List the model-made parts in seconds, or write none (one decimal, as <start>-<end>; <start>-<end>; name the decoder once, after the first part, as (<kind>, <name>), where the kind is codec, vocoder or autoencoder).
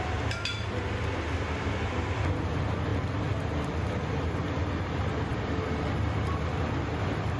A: none